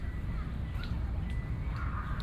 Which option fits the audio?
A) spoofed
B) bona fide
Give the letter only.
B